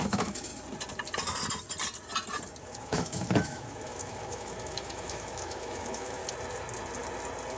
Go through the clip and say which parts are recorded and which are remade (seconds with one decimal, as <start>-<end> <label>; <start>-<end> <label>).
0.0-0.5 remade; 0.5-2.6 recorded; 2.6-6.2 remade; 6.2-7.6 recorded